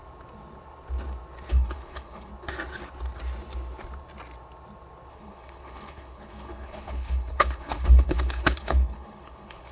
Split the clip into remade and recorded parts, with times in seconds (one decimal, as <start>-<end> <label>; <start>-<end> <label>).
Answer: 0.0-1.5 recorded; 1.5-2.3 remade; 2.3-5.1 recorded; 5.1-9.7 remade